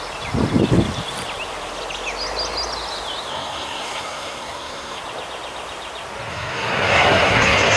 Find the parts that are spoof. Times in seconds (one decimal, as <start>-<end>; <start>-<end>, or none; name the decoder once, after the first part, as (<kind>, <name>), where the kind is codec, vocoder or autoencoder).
3.3-5.0 (codec, SNAC); 6.3-7.8